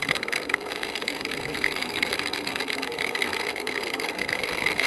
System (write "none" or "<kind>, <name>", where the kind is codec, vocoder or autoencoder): codec, SNAC